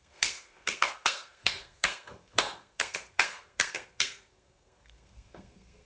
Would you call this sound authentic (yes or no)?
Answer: no